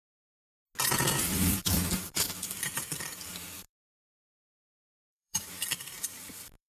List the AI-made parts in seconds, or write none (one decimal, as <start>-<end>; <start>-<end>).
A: 1.2-6.7